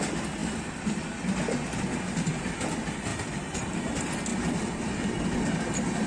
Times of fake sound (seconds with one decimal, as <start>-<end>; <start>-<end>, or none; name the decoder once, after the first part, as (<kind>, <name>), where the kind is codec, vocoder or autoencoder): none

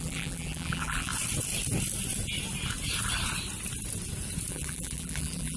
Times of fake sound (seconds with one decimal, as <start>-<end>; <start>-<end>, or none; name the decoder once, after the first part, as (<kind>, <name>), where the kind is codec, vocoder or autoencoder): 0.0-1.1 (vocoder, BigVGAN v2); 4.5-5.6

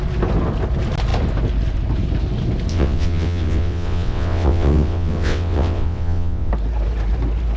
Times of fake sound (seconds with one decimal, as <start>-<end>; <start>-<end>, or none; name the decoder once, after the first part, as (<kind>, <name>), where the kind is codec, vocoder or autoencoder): 2.7-6.5 (vocoder, WaveNeXt)

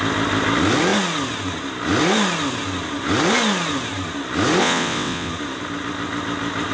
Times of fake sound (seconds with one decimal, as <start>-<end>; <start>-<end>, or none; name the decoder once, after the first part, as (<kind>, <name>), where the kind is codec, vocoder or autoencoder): 4.6-5.3 (vocoder, WaveNeXt)

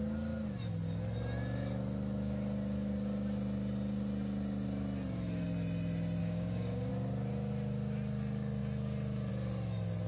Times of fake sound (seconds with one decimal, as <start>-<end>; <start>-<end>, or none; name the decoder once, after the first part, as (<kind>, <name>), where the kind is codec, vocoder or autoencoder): 6.2-6.9 (codec, DAC)

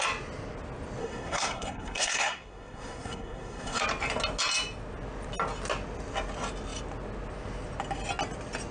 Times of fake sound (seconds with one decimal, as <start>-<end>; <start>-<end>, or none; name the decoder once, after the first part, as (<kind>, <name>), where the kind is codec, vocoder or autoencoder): 1.0-3.8 (codec, SNAC)

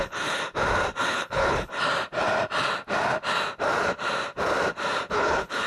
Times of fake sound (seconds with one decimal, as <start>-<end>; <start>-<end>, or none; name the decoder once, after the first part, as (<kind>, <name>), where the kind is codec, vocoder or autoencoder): 0.0-0.4 (codec, HILCodec); 1.0-1.7; 5.1-5.7

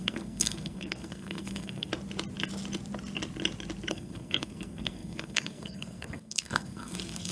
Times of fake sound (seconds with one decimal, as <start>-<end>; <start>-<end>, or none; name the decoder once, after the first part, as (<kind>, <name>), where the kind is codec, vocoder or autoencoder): 0.0-1.9 (codec, SNAC); 3.9-7.3